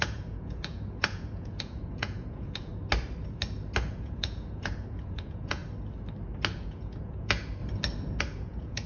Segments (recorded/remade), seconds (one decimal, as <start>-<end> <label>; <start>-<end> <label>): 0.0-2.7 remade; 2.7-3.9 recorded; 3.9-5.6 remade; 5.6-6.5 recorded; 6.5-7.6 remade; 7.6-8.2 recorded; 8.2-8.9 remade